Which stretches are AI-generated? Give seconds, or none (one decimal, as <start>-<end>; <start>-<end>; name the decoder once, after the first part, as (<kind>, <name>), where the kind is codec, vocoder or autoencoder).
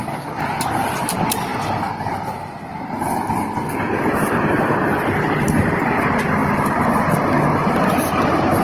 none